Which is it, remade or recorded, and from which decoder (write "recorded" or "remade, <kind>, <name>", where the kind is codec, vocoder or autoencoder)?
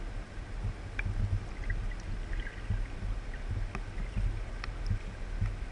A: recorded